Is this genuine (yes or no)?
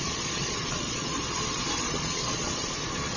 no